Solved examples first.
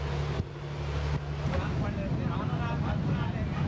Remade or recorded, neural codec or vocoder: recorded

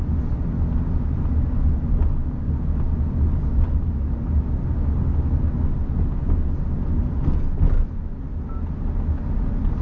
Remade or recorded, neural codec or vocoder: recorded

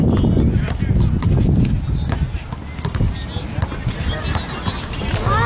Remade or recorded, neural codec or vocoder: recorded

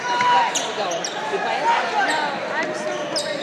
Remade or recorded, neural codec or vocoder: remade, vocoder, BigVGAN v2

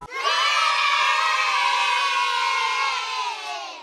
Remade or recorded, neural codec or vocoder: recorded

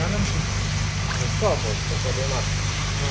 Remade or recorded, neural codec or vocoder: recorded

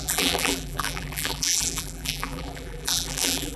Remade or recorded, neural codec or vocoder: remade, vocoder, BigVGAN v2